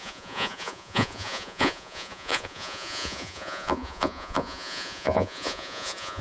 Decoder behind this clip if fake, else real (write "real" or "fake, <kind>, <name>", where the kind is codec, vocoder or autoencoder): fake, vocoder, Vocos